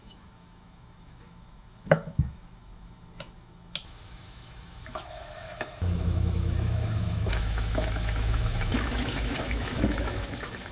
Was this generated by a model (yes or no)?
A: yes